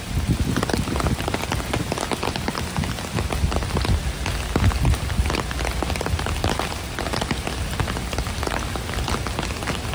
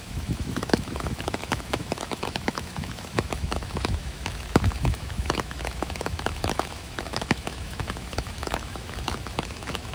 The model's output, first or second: second